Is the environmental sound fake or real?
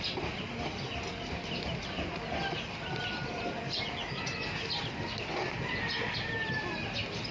real